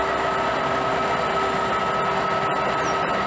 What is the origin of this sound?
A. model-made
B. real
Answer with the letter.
B